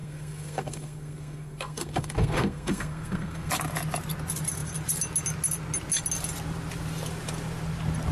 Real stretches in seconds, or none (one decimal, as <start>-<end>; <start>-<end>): 3.5-8.1